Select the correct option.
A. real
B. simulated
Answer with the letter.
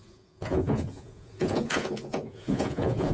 B